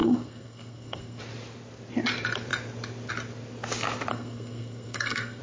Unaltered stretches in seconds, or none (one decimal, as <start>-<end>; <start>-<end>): 1.2-4.1